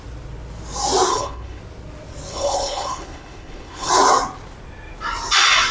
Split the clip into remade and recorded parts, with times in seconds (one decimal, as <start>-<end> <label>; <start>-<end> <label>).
0.0-1.1 recorded; 1.1-1.6 remade; 1.6-2.3 recorded; 2.3-3.9 remade; 3.9-5.7 recorded